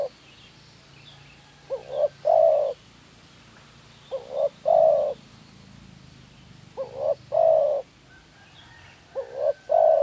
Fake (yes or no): no